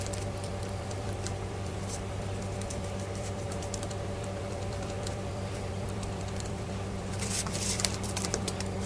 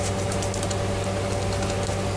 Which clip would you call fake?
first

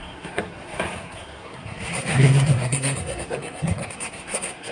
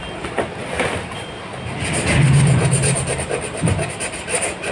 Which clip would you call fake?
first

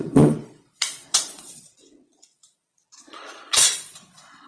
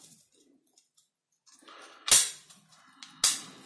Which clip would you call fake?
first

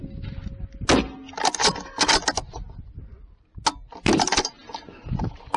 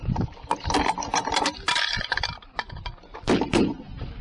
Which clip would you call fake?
second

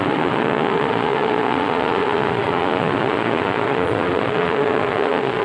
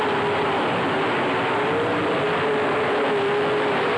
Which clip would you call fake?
first